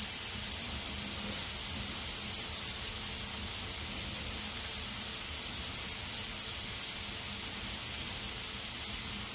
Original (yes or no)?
yes